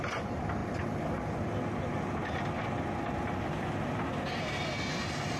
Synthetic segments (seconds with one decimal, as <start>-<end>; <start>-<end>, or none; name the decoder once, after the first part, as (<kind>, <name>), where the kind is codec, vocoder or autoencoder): none